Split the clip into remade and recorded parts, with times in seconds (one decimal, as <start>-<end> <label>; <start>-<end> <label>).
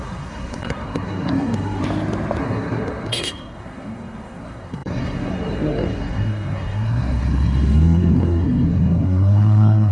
0.0-1.8 remade; 1.8-2.4 recorded; 2.4-9.9 remade